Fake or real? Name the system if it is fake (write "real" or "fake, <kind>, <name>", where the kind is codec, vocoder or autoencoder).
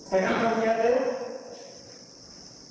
fake, vocoder, WaveNeXt